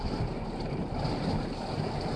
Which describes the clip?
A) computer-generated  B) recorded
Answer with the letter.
B